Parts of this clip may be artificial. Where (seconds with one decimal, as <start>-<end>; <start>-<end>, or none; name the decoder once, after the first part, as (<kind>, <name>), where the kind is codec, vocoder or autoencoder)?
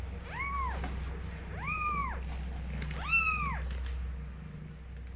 none